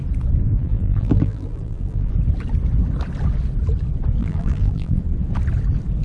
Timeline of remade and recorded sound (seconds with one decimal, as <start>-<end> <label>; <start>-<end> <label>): 0.0-0.5 recorded; 0.5-2.1 remade; 2.1-4.2 recorded; 4.2-5.0 remade; 5.0-6.0 recorded